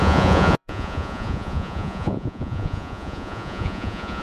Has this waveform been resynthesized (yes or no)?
yes